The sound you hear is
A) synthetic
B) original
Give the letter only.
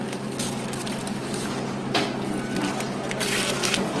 B